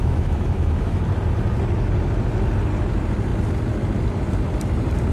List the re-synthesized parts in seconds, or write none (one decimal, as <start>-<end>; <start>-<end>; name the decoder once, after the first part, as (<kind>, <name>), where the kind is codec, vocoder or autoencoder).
0.0-1.0 (autoencoder, DAC-VAE)